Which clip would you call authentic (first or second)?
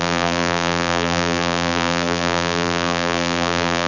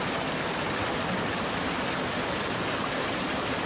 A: second